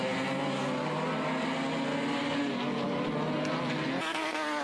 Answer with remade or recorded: recorded